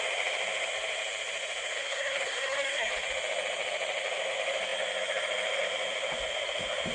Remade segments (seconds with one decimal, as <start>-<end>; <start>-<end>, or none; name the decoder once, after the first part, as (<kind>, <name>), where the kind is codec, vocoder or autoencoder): 1.8-2.9 (codec, SNAC)